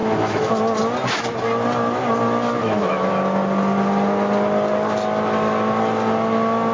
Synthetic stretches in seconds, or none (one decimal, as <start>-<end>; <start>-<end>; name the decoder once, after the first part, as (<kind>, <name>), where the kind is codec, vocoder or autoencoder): 0.0-0.6 (autoencoder, DAC-VAE); 2.6-3.1